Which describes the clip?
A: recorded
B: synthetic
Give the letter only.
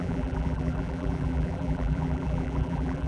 B